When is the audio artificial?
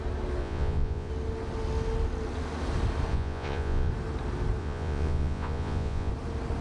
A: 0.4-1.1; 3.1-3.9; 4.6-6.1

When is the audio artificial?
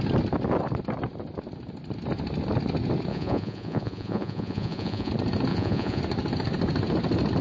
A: 3.1-5.1; 5.5-6.0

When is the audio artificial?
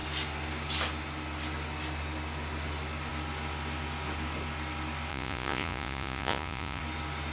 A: 5.1-6.8